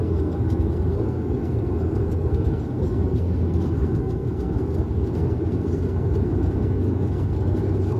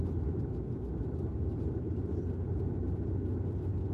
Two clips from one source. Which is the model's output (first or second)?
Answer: first